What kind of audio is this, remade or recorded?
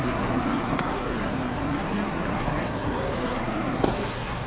remade